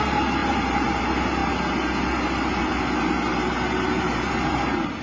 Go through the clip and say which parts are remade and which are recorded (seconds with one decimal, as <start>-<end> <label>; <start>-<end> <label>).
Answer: 0.0-0.4 recorded; 0.4-1.0 remade; 1.0-3.3 recorded; 3.3-4.3 remade; 4.3-5.0 recorded